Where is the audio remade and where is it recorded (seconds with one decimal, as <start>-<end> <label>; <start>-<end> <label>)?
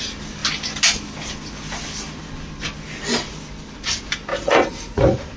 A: 0.0-4.3 recorded; 4.3-5.0 remade; 5.0-5.4 recorded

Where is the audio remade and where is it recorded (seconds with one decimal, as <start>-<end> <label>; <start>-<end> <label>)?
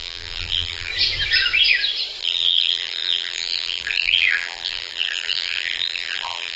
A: 0.0-0.9 remade; 0.9-2.2 recorded; 2.2-6.6 remade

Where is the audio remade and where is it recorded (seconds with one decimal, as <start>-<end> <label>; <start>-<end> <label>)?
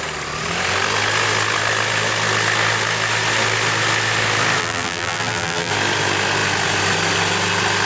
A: 0.0-4.6 recorded; 4.6-5.7 remade; 5.7-7.9 recorded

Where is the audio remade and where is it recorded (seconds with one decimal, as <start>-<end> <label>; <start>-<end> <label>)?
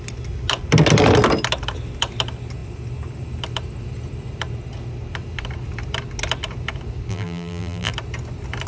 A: 0.0-7.1 recorded; 7.1-7.9 remade; 7.9-8.7 recorded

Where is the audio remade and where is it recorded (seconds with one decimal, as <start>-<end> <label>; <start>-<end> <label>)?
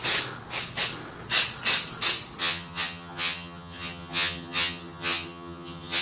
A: 0.0-2.4 recorded; 2.4-6.0 remade